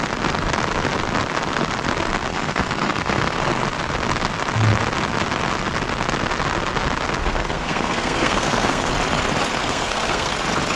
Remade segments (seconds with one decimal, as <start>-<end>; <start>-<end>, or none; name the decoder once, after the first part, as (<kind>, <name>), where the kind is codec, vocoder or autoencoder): 2.3-3.6 (codec, SNAC); 7.2-8.9; 9.6-10.3